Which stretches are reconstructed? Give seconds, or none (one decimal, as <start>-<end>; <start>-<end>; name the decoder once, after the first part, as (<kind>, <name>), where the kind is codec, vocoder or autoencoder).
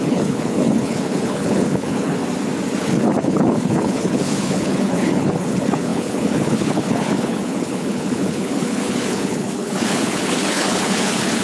0.0-2.2 (codec, HILCodec); 2.8-11.4